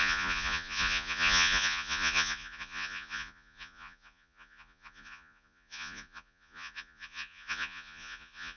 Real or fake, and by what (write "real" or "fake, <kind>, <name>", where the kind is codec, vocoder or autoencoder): fake, vocoder, Vocos